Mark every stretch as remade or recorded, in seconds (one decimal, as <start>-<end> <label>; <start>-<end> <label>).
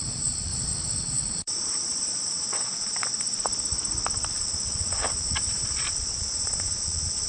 0.0-0.5 remade; 0.5-1.0 recorded; 1.0-3.1 remade; 3.1-4.3 recorded; 4.3-7.3 remade